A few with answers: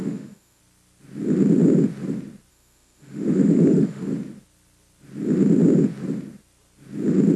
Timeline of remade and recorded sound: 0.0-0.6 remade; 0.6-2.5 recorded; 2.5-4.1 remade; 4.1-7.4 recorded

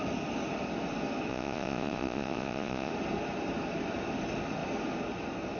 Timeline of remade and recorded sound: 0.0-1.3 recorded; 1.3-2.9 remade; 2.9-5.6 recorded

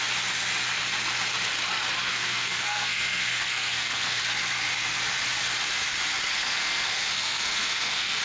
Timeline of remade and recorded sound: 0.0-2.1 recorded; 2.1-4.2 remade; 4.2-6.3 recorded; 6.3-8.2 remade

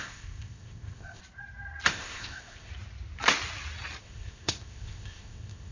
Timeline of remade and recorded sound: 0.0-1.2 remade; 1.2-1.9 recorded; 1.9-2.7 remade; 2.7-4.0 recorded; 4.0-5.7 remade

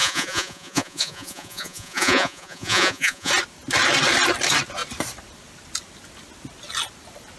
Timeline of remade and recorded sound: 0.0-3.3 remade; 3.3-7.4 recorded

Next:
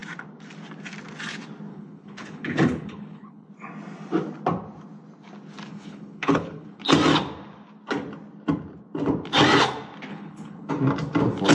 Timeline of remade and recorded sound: 0.0-1.7 recorded; 1.7-3.5 remade; 3.5-5.7 recorded; 5.7-6.8 remade; 6.8-10.1 recorded; 10.1-10.7 remade; 10.7-11.5 recorded

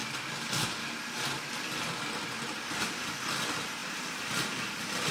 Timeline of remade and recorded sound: 0.0-5.1 recorded